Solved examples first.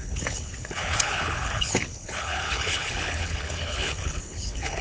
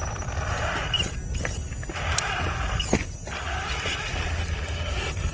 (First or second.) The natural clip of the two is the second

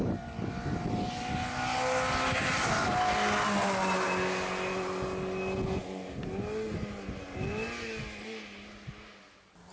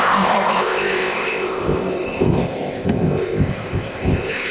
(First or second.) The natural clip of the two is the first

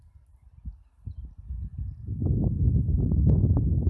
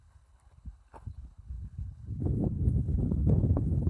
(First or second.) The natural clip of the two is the first